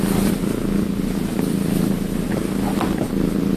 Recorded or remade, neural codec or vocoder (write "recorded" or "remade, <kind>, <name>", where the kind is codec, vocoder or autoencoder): recorded